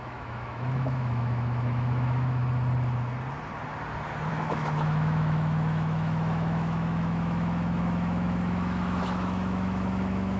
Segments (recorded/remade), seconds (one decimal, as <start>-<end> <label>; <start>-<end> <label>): 0.0-2.4 remade; 2.4-4.3 recorded; 4.3-10.4 remade